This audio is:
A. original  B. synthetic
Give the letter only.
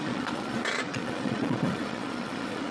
B